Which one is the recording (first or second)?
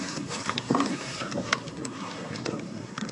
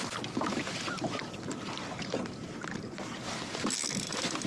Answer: second